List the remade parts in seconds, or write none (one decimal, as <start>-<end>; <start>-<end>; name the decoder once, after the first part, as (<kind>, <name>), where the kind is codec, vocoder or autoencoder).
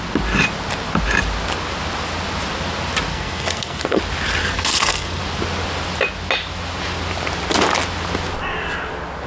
3.1-4.0 (codec, SNAC); 4.4-5.2